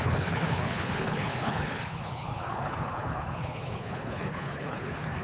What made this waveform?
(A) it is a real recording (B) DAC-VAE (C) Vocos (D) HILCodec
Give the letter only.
D